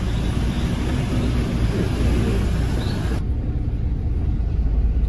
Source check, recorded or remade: recorded